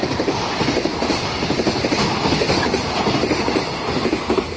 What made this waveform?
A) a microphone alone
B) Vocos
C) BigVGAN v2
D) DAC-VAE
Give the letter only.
C